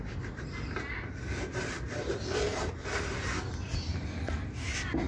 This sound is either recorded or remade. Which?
recorded